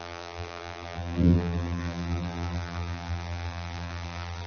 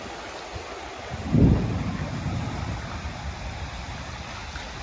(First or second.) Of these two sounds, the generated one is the first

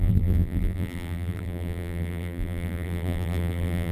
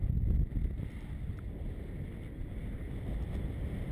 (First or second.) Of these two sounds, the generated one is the first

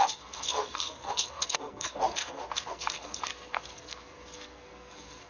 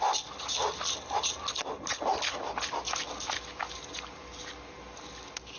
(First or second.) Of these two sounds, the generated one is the first